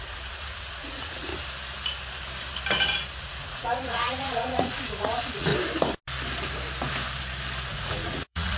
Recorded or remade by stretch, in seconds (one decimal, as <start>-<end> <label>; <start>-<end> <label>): 0.0-1.3 remade; 1.3-3.2 recorded; 3.2-5.5 remade; 5.5-7.7 recorded; 7.7-8.6 remade